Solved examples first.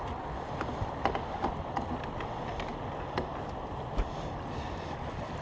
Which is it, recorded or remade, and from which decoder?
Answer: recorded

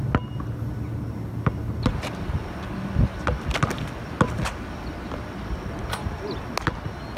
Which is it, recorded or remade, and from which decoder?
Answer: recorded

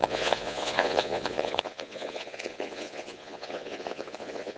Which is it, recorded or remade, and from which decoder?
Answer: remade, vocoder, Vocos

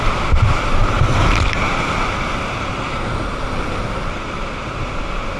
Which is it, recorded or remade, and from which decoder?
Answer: recorded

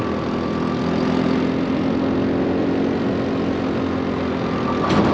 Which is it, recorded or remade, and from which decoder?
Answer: recorded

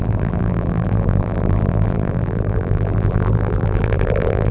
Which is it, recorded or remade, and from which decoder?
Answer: remade, vocoder, BigVGAN v2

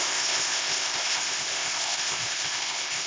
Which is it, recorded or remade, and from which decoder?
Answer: remade, codec, ZipCodec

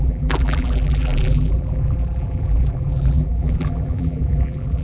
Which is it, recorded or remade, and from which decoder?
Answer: remade, vocoder, BigVGAN v2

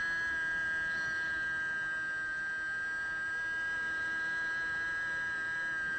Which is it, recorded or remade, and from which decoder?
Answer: recorded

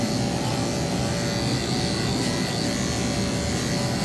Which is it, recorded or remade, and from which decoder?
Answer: recorded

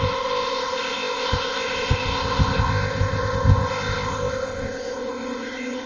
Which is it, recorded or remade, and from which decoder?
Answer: remade, codec, ZipCodec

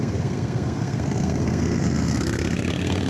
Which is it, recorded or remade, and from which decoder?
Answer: remade, codec, SNAC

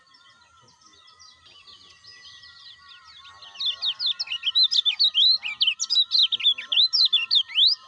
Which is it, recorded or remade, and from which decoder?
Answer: recorded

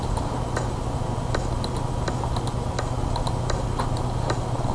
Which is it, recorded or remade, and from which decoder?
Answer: recorded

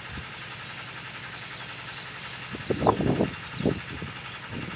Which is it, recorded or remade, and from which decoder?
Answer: recorded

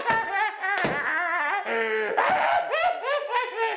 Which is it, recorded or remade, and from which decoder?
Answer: recorded